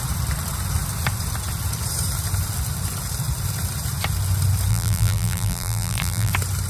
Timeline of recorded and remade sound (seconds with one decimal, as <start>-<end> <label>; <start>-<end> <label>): 0.0-4.7 recorded; 4.7-6.3 remade; 6.3-6.7 recorded

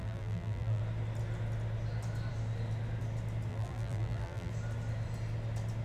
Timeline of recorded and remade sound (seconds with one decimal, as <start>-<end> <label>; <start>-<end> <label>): 0.0-0.8 remade; 0.8-3.5 recorded; 3.5-4.5 remade; 4.5-5.8 recorded